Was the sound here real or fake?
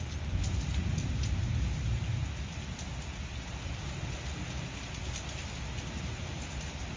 real